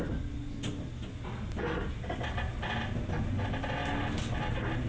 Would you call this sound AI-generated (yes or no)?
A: no